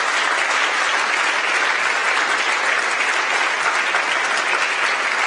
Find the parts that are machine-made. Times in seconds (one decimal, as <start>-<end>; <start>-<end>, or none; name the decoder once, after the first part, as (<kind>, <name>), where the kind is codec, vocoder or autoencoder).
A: 2.0-3.8 (vocoder, BigVGAN v2)